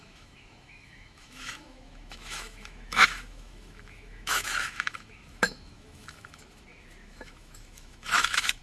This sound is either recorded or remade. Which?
remade